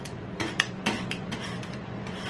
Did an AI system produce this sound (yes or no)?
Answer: yes